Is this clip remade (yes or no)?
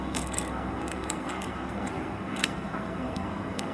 yes